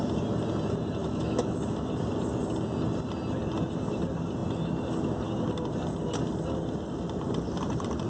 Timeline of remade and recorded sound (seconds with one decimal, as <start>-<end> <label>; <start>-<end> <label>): 0.0-1.0 recorded; 1.0-1.9 remade; 1.9-8.1 recorded